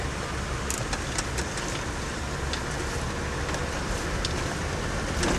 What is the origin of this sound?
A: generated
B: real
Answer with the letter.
B